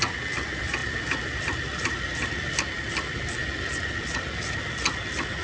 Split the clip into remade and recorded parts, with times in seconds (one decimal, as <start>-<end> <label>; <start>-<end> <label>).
0.0-0.8 recorded; 0.8-2.9 remade; 2.9-5.4 recorded